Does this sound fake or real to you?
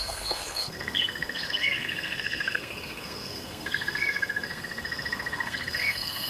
fake